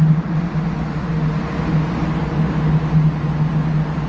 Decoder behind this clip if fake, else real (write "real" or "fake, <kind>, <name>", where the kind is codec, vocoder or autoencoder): real